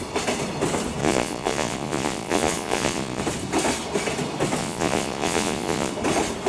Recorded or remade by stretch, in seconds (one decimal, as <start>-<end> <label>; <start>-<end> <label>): 0.0-1.0 recorded; 1.0-3.2 remade; 3.2-4.6 recorded; 4.6-5.9 remade; 5.9-6.5 recorded